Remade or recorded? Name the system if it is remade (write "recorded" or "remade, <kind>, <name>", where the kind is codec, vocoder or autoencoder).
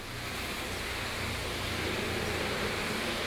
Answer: recorded